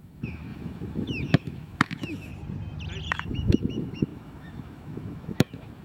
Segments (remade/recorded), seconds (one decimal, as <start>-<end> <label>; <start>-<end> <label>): 0.0-2.3 remade; 2.3-3.1 recorded; 3.1-5.8 remade